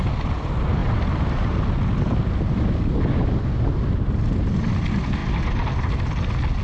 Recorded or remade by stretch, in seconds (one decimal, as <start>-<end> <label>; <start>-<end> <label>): 0.0-6.6 recorded